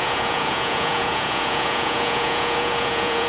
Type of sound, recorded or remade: remade